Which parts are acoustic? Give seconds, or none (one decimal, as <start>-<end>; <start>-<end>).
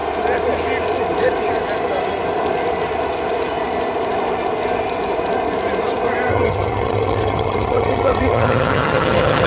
0.0-6.3